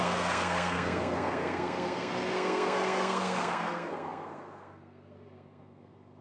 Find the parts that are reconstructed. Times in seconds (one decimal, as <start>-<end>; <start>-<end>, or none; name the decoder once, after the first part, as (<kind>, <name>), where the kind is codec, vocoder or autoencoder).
0.0-6.2 (codec, SNAC)